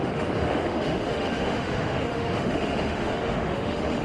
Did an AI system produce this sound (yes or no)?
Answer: yes